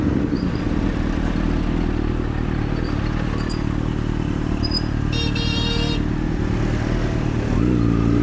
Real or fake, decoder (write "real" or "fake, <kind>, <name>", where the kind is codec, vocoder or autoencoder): real